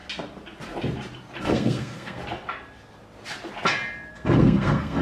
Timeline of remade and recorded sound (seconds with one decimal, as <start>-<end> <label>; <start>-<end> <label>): 0.0-1.4 recorded; 1.4-2.2 remade; 2.2-4.1 recorded; 4.1-5.0 remade